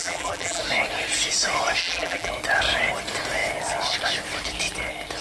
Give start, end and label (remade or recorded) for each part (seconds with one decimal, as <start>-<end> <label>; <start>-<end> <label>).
0.0-0.6 remade; 0.6-1.8 recorded; 1.8-2.3 remade; 2.3-5.2 recorded